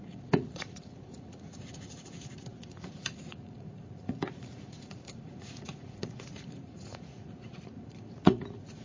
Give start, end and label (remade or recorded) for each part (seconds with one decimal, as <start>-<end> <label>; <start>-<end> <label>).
0.0-8.8 remade